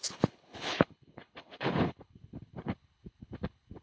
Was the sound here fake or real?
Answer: fake